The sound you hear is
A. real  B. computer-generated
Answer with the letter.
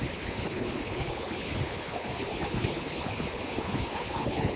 B